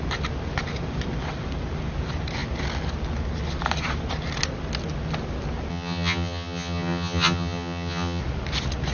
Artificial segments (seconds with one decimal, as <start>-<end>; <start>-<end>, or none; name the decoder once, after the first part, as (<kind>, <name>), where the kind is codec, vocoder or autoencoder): 5.7-8.2 (vocoder, HiFi-GAN)